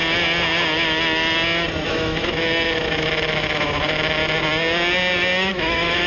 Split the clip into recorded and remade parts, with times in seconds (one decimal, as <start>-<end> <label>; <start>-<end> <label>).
0.0-1.9 recorded; 1.9-4.2 remade; 4.2-5.5 recorded; 5.5-6.1 remade